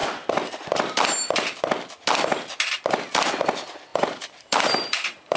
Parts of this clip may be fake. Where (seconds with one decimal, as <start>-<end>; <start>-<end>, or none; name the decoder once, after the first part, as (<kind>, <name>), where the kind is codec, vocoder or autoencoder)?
3.9-5.4 (vocoder, BigVGAN v2)